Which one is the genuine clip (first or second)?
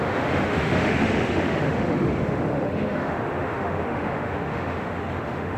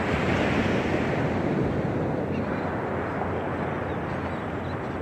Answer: second